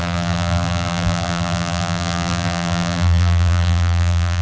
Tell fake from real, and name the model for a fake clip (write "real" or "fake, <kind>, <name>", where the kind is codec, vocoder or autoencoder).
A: fake, vocoder, BigVGAN v2